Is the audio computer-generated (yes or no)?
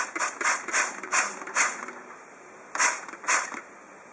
yes